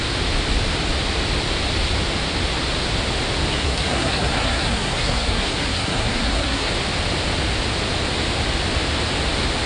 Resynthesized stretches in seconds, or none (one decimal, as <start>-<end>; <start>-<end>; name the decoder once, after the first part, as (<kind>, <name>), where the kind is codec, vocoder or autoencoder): 3.5-6.7 (codec, SNAC)